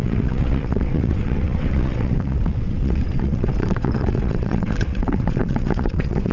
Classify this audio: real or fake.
fake